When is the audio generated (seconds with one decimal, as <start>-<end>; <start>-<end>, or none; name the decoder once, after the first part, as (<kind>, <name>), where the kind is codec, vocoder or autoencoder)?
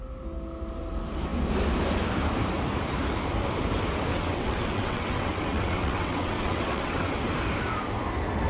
4.1-7.2 (vocoder, WaveNeXt)